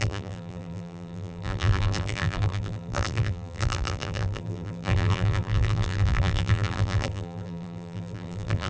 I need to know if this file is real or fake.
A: fake